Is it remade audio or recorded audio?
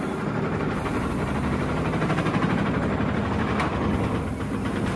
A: recorded